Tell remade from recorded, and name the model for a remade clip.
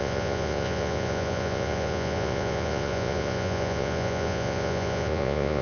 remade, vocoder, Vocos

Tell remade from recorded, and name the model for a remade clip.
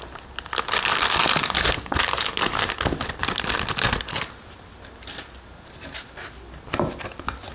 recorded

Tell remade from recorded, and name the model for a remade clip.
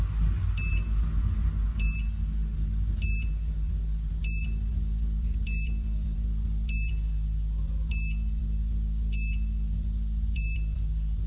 recorded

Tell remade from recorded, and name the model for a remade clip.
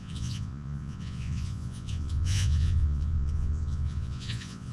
remade, vocoder, Vocos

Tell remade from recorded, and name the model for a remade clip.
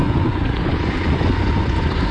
remade, vocoder, Vocos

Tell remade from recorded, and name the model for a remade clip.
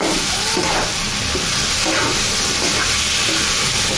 recorded